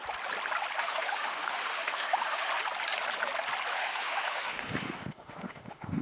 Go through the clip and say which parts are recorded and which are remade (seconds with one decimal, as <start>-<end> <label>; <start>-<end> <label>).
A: 0.0-0.8 recorded; 0.8-2.5 remade; 2.5-3.7 recorded; 3.7-6.0 remade